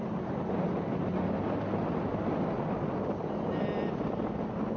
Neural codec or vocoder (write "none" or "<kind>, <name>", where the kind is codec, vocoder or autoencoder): none